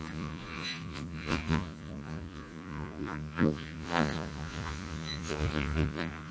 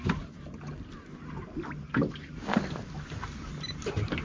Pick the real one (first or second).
second